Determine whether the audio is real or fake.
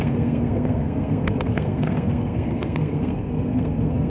fake